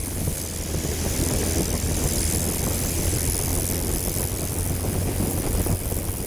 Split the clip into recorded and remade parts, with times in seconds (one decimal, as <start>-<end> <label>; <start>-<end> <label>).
0.0-6.3 recorded